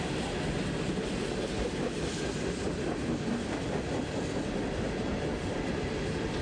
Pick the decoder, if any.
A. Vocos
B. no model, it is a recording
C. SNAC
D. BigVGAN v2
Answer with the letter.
B